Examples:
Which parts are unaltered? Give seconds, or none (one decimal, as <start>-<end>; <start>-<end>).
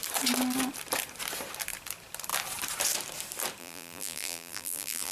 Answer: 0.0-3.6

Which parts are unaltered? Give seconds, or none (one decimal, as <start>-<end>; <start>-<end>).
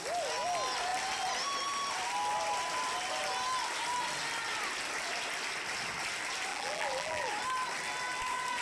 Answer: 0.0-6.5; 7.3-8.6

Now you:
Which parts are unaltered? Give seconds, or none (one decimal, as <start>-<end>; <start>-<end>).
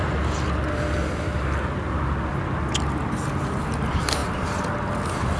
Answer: 0.0-5.4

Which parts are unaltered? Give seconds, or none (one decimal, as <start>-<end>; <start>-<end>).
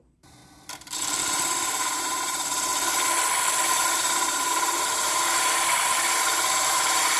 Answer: 0.4-1.2; 2.7-3.9